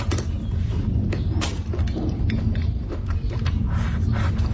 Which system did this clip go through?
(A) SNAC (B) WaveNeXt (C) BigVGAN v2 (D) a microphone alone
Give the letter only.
C